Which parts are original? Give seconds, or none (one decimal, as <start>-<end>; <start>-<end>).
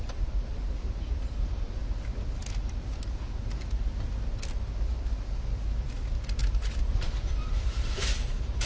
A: 1.8-6.4